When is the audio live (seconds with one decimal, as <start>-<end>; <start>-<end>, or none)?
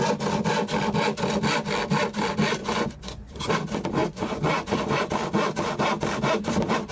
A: 0.0-2.6; 3.5-4.0; 5.1-6.9